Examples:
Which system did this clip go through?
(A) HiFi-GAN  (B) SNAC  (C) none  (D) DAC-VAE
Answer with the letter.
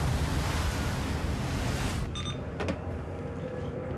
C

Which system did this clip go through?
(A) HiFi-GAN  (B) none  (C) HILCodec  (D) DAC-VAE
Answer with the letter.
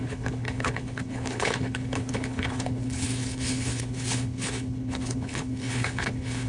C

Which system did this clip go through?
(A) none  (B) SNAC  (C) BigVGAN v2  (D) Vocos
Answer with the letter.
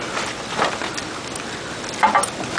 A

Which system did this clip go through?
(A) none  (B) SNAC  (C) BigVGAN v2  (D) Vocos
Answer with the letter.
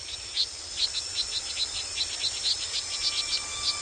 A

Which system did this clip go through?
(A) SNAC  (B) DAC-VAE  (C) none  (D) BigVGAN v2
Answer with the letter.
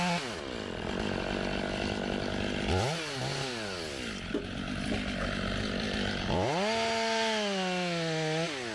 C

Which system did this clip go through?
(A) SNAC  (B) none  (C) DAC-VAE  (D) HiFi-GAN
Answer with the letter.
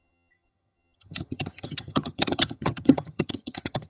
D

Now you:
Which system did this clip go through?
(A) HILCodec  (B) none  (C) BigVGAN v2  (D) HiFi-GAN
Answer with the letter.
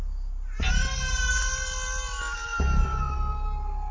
B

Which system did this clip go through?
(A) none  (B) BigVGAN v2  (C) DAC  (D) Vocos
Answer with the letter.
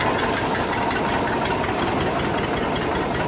A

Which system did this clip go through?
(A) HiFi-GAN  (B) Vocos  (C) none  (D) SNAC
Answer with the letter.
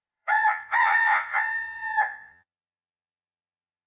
B